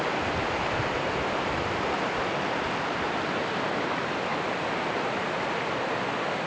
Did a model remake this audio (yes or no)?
no